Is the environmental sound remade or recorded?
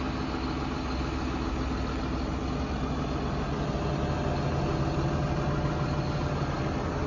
recorded